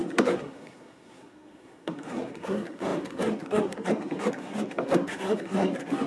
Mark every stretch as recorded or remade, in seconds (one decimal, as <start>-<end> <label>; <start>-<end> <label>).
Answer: 0.0-6.1 remade

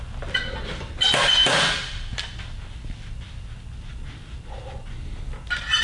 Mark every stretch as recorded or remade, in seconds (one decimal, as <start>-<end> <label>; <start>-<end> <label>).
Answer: 0.0-5.8 recorded